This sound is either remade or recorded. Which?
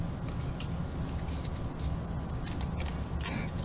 recorded